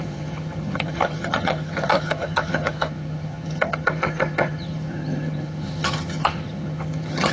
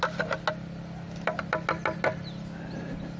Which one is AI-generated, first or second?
first